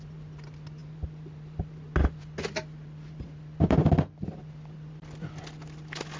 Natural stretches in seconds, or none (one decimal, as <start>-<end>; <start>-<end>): 0.0-6.2